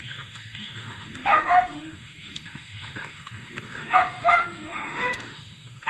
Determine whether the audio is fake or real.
fake